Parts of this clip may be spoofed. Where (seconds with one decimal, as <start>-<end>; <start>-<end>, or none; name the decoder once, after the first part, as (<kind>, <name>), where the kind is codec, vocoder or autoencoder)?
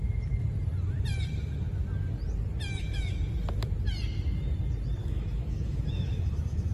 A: 5.0-6.7 (autoencoder, DAC-VAE)